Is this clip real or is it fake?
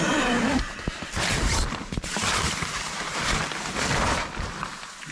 real